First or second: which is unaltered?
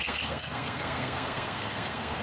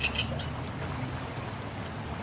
second